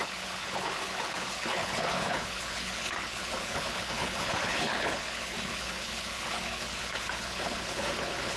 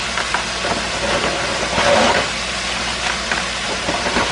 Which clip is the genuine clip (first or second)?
second